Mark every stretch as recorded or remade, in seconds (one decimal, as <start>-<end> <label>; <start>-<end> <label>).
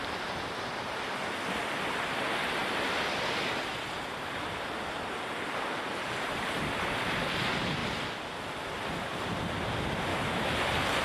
0.0-10.1 recorded; 10.1-10.6 remade; 10.6-11.0 recorded